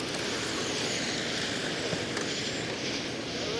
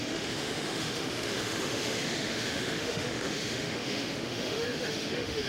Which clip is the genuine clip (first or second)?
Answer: first